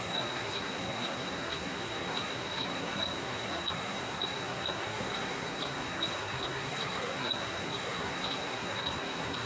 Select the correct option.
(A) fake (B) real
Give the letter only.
A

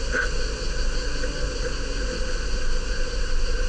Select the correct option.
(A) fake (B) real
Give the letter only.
B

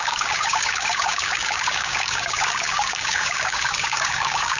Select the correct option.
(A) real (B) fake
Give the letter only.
B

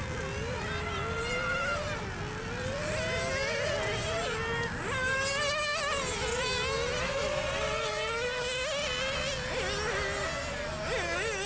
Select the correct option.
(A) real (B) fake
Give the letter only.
A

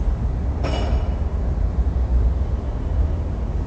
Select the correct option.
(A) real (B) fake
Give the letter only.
A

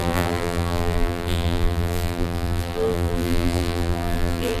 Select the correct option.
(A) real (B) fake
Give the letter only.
B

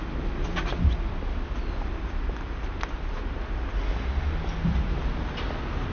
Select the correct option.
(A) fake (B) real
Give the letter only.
B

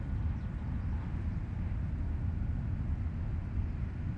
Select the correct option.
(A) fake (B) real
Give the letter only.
B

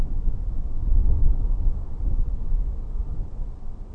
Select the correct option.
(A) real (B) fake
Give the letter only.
B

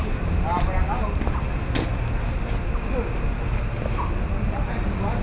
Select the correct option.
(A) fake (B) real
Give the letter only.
B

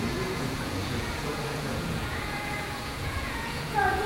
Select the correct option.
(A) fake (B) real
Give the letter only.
A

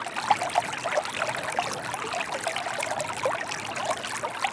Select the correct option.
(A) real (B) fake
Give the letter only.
A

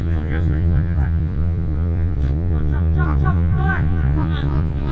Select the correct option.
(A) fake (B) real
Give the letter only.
A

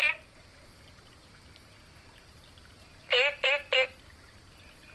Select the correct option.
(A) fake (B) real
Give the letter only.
B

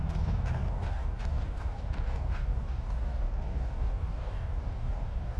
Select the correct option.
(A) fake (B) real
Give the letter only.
A